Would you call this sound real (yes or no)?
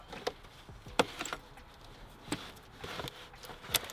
yes